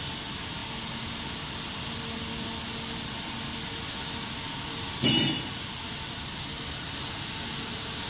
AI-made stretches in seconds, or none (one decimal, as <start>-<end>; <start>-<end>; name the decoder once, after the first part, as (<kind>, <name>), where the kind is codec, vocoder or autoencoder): none

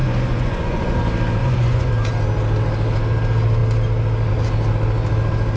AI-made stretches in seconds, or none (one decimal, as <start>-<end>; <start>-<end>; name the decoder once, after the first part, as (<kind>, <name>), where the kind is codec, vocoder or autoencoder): 0.0-1.0 (vocoder, Vocos); 1.4-1.9

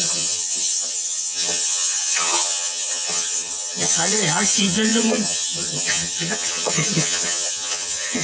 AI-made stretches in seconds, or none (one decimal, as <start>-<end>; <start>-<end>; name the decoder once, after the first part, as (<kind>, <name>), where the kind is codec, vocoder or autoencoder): 0.0-8.2 (vocoder, HiFi-GAN)

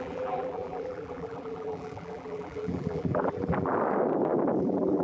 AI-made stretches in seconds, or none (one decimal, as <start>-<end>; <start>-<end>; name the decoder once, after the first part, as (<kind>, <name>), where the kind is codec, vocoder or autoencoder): 0.0-3.7 (vocoder, BigVGAN v2); 4.6-5.0

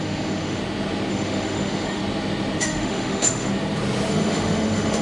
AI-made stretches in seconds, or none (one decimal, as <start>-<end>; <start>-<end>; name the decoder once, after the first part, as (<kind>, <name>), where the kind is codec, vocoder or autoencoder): 0.0-0.6 (autoencoder, DAC-VAE); 1.1-2.0; 2.6-3.5; 4.1-5.0

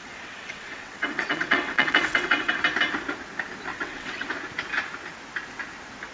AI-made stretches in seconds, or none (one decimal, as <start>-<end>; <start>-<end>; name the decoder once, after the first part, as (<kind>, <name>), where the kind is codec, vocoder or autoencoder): 0.0-2.5 (vocoder, WaveNeXt); 3.7-4.3

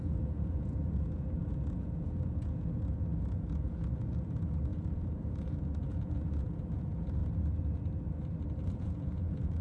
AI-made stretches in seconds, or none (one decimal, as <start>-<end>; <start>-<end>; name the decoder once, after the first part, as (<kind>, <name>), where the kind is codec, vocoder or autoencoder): 0.0-7.2 (vocoder, Vocos); 8.8-9.6

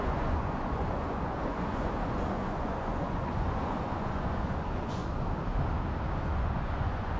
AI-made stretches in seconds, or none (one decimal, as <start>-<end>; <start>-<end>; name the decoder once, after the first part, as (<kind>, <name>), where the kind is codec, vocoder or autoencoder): 0.0-5.0 (vocoder, Vocos); 6.2-7.2